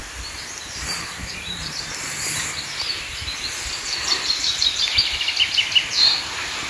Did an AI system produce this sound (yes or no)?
yes